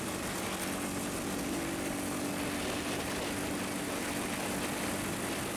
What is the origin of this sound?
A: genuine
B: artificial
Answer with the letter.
A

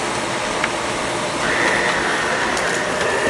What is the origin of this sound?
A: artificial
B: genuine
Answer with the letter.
B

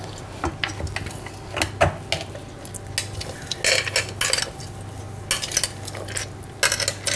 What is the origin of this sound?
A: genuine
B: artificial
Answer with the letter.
A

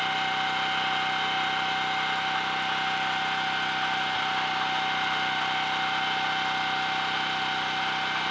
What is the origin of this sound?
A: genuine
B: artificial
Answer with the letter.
A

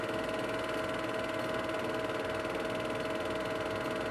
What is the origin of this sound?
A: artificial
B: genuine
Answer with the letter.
B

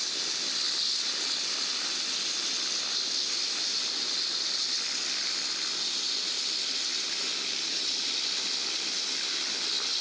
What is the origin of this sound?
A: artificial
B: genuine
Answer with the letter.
B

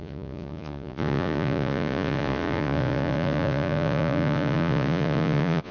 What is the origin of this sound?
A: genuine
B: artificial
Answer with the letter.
B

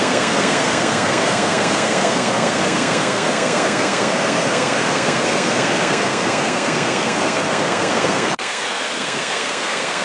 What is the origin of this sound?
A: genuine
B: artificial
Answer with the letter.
B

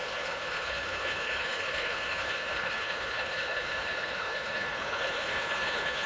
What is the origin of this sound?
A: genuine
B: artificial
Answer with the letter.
B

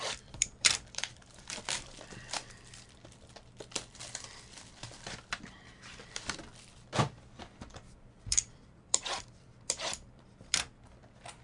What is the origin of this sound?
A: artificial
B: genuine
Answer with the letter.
A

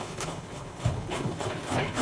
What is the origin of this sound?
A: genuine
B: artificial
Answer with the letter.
B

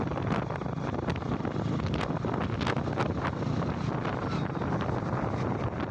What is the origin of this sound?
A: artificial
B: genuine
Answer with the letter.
B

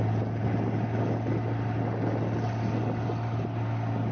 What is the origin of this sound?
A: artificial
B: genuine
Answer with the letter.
B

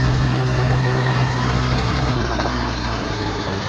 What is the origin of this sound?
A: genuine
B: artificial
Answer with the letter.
B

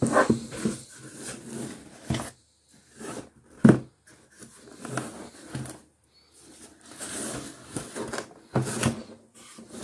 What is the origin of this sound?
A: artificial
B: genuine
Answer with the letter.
B